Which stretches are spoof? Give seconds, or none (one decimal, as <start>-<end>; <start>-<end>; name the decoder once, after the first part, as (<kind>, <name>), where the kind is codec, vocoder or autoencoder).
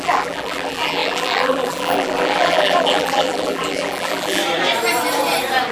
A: 0.0-4.4 (vocoder, BigVGAN v2)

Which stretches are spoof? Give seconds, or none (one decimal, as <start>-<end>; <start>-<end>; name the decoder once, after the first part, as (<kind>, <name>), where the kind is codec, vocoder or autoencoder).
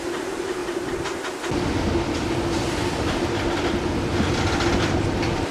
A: none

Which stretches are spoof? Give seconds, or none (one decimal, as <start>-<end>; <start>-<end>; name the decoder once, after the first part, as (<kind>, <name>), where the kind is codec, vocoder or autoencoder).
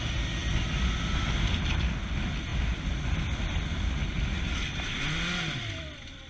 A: none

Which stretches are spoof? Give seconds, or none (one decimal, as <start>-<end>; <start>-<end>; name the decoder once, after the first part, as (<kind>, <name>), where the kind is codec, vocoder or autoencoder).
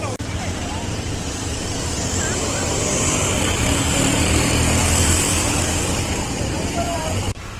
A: 0.0-7.6 (vocoder, BigVGAN v2)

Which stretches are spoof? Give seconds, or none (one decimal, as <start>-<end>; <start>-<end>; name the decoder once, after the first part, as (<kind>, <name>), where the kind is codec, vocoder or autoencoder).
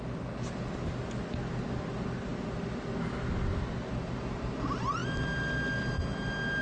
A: none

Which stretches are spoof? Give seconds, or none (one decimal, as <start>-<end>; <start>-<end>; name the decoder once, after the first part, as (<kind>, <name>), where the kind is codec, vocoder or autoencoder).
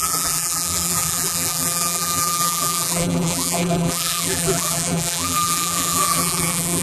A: 0.0-6.8 (vocoder, BigVGAN v2)